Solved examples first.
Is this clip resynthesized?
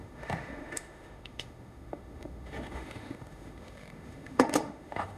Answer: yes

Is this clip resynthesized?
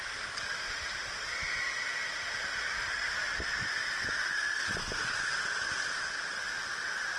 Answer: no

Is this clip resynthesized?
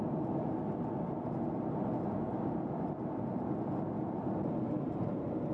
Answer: no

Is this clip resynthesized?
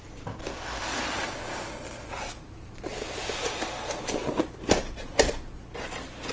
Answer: no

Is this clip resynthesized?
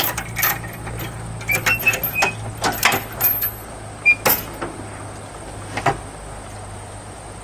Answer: no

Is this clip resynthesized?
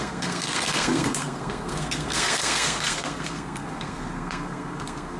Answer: yes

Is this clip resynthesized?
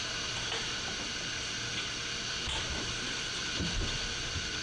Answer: no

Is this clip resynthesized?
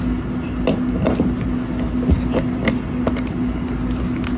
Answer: no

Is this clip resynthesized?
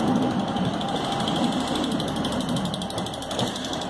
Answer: yes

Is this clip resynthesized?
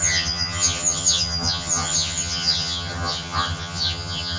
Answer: yes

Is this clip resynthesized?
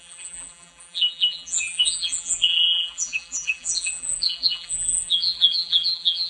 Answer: yes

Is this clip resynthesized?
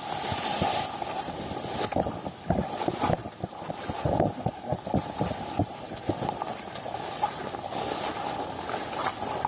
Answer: no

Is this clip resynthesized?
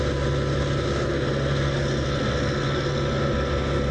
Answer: no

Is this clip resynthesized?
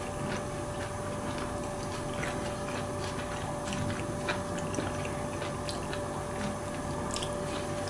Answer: no